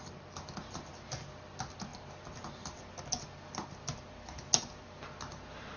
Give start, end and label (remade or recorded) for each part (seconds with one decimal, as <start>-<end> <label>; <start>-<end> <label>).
0.0-5.8 recorded